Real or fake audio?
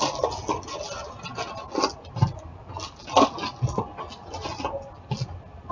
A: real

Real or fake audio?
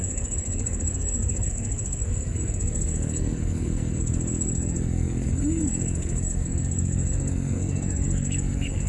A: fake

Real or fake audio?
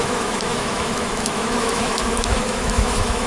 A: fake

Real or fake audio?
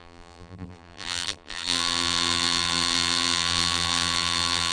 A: fake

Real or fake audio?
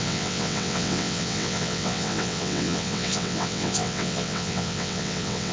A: fake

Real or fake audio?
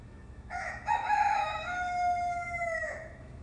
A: fake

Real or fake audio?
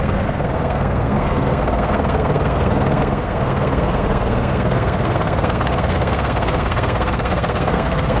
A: fake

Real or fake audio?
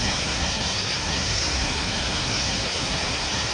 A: fake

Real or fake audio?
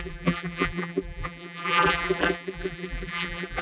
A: fake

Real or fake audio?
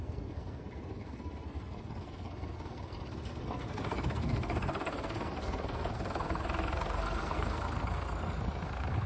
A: fake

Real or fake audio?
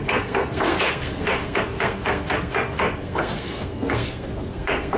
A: fake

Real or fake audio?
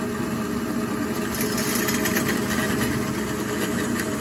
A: real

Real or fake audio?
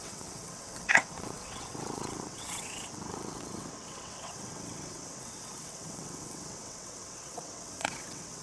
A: fake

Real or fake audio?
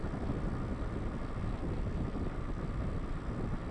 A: real